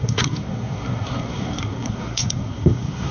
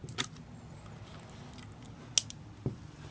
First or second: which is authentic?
second